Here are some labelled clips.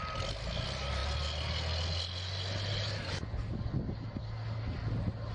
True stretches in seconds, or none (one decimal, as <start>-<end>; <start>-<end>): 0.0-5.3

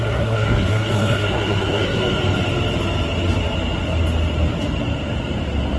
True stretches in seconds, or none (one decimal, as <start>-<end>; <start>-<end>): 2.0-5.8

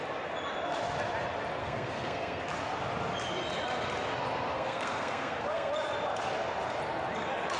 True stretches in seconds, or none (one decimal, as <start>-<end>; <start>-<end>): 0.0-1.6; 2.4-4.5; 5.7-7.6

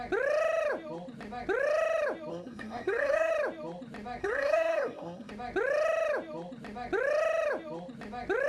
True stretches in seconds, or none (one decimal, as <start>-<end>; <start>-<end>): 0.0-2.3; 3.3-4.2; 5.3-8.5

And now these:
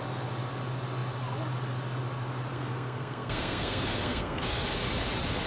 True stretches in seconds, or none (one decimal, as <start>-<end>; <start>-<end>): 0.0-2.5; 4.6-5.5